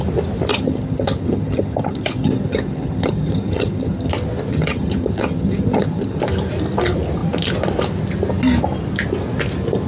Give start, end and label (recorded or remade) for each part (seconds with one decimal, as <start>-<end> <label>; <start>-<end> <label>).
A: 0.0-0.5 recorded; 0.5-4.1 remade; 4.1-4.5 recorded; 4.5-6.2 remade; 6.2-9.9 recorded